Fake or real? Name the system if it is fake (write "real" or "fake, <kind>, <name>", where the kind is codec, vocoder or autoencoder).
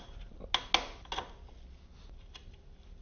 real